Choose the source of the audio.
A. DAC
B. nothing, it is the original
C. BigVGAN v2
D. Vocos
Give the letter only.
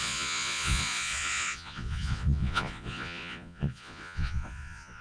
D